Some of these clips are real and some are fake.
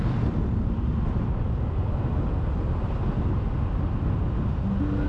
real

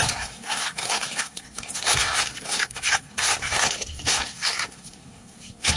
fake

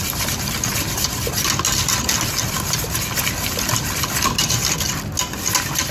real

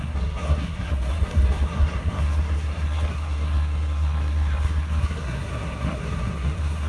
fake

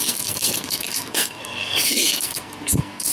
fake